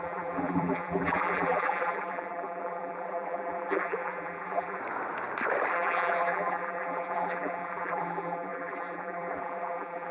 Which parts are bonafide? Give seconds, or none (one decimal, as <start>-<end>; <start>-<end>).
4.8-5.7